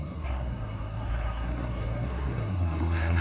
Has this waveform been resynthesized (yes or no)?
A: yes